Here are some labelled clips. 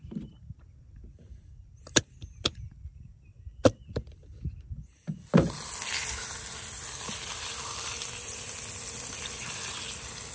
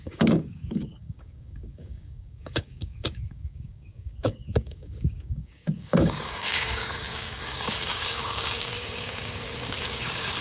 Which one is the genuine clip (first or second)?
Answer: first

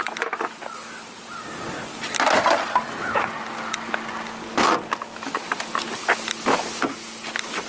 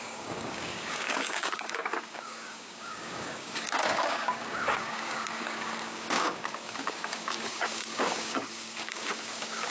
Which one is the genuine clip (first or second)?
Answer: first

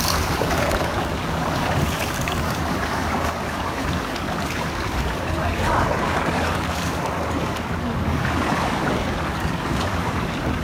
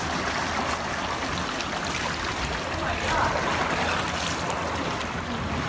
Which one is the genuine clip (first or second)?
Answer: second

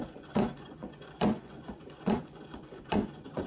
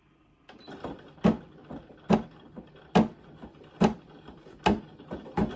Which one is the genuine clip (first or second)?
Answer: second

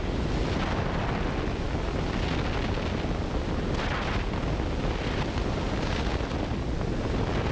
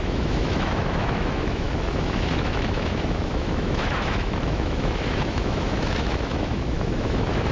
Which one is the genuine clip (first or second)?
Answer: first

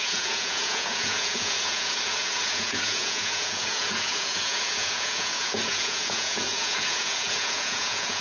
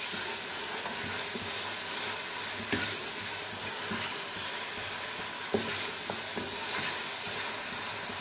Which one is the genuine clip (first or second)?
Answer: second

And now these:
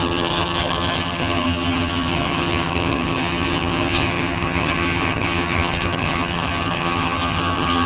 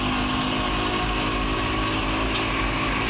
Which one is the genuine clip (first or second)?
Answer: second